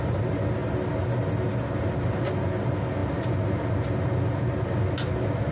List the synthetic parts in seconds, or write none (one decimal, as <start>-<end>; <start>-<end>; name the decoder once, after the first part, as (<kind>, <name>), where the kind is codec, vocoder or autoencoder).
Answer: none